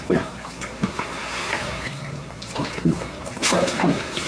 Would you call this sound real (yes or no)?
no